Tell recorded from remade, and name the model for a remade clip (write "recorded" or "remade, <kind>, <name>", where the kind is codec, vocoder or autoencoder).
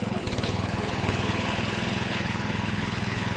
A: remade, codec, HILCodec